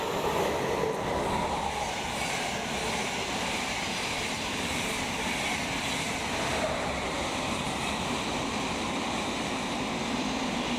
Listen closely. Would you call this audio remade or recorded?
recorded